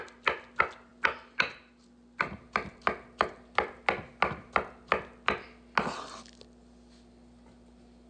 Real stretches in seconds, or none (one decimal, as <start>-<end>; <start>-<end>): 0.0-8.1